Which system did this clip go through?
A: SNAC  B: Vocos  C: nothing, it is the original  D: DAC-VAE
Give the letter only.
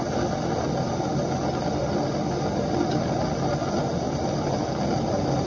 C